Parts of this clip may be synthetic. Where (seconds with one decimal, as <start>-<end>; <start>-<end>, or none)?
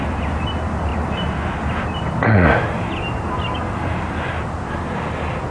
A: none